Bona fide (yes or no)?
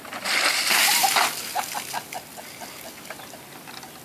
yes